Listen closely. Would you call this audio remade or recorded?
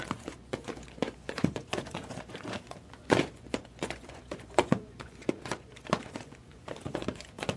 remade